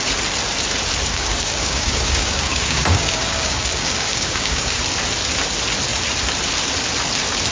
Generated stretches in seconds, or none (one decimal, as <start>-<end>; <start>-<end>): 1.1-4.8